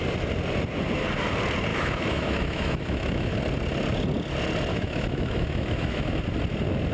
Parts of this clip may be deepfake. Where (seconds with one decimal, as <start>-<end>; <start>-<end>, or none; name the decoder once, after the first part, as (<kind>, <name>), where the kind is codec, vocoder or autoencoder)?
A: 1.7-3.4 (autoencoder, DAC-VAE); 4.7-6.2